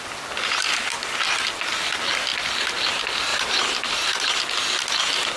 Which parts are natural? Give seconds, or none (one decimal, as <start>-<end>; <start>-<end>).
0.0-3.3; 4.4-5.4